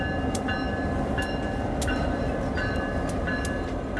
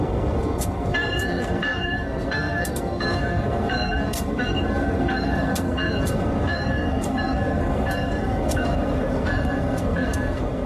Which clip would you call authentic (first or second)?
first